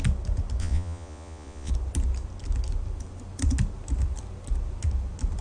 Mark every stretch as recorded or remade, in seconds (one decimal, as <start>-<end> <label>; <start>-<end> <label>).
0.0-0.6 recorded; 0.6-1.7 remade; 1.7-5.4 recorded